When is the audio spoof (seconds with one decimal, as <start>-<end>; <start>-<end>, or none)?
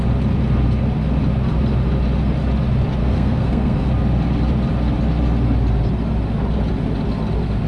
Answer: 3.0-3.9